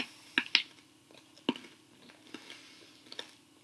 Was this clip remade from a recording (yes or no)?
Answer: no